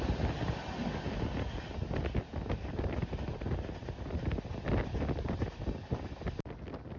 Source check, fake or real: real